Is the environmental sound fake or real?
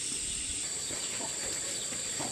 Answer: fake